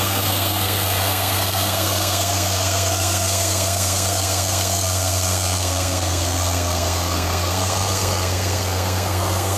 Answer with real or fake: fake